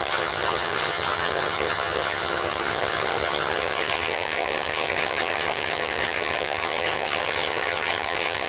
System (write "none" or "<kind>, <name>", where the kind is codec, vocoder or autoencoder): vocoder, HiFi-GAN